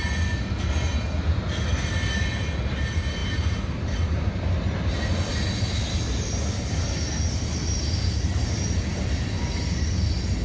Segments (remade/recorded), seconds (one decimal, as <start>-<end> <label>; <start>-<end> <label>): 0.0-10.4 recorded